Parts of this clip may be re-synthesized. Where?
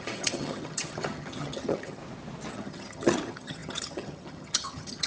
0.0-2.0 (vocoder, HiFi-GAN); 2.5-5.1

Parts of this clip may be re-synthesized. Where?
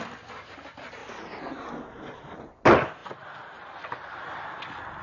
none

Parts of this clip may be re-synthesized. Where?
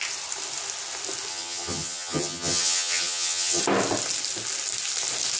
1.3-3.6 (vocoder, HiFi-GAN)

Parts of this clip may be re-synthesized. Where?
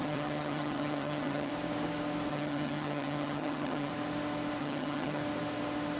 0.0-1.5 (vocoder, HiFi-GAN); 2.3-3.9; 4.6-5.2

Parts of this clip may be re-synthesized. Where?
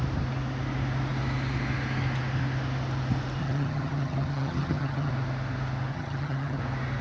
3.4-5.1 (vocoder, HiFi-GAN); 5.9-6.6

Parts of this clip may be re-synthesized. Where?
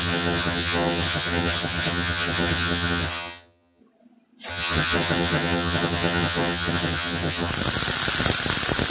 0.0-3.8 (vocoder, HiFi-GAN); 4.5-7.5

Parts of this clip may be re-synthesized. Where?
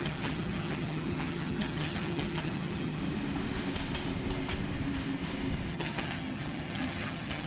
0.0-3.0 (vocoder, HiFi-GAN); 5.7-7.5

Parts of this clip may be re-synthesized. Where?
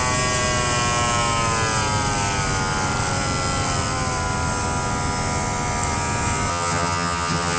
6.5-7.6 (vocoder, HiFi-GAN)